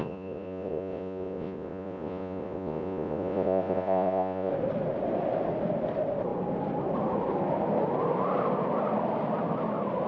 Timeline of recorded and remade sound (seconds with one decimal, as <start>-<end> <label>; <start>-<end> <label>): 0.0-4.5 remade; 4.5-10.1 recorded